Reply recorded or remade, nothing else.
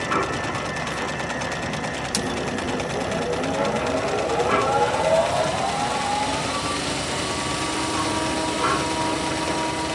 recorded